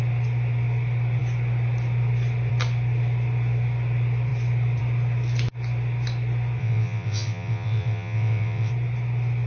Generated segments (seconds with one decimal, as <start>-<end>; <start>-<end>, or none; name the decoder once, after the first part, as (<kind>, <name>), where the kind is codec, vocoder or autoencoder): 6.6-8.7 (vocoder, WaveNeXt)